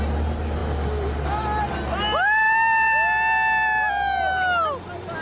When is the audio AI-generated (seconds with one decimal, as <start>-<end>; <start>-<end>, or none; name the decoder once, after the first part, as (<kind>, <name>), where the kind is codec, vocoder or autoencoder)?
none